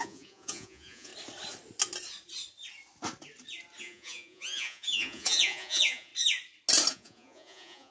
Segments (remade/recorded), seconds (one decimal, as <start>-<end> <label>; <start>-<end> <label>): 0.0-1.1 remade; 1.1-3.8 recorded; 3.8-6.1 remade; 6.1-6.9 recorded; 6.9-7.9 remade